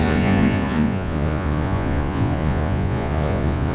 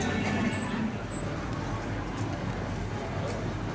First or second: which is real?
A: second